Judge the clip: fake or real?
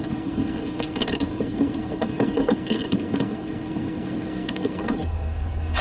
fake